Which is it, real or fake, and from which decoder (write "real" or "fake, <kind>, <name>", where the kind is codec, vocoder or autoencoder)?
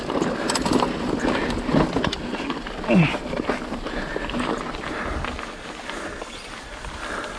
real